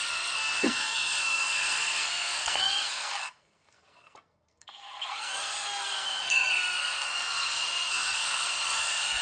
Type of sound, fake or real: fake